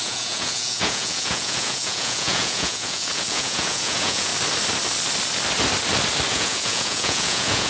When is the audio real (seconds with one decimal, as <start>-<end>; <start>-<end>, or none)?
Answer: 4.3-6.3